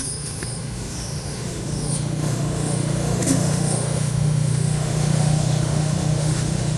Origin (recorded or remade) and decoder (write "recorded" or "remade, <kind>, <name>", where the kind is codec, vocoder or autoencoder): remade, autoencoder, DAC-VAE